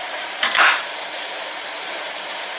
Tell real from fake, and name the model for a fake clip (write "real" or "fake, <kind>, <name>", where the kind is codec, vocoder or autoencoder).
fake, vocoder, BigVGAN v2